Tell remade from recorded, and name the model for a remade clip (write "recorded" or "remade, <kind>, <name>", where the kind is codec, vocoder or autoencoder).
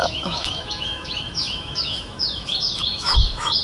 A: remade, autoencoder, DAC-VAE